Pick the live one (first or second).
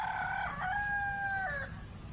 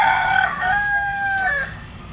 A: first